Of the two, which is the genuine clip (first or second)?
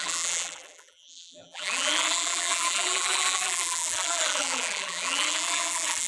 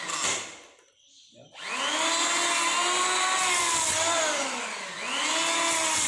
second